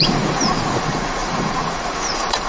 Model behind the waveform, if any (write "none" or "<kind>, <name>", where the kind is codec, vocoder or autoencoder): vocoder, Vocos